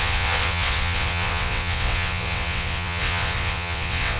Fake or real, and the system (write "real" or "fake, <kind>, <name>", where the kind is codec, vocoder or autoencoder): fake, vocoder, WaveNeXt